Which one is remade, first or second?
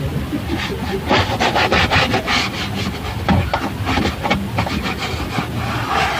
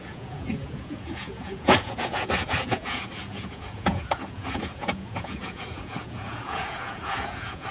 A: second